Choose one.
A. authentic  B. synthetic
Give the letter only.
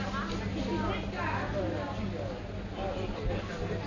A